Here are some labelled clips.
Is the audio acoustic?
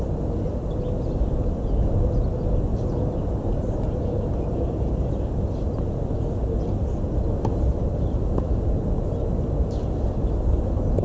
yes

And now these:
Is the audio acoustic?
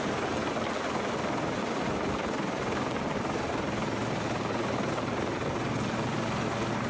yes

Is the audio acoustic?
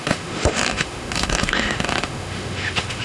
no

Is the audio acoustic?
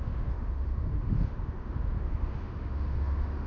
no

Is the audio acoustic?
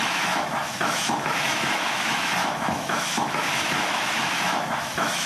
no